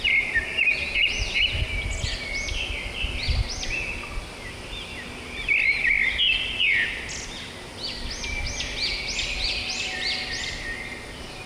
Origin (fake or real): real